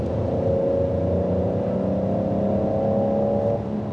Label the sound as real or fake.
real